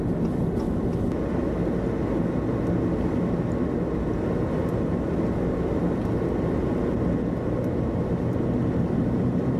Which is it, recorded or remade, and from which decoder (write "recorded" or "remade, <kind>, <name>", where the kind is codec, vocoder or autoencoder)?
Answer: recorded